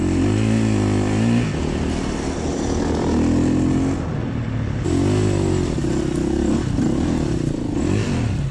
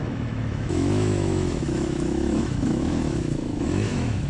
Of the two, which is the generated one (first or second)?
second